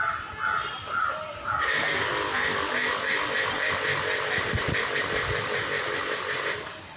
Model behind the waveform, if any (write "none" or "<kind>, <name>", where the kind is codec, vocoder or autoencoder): none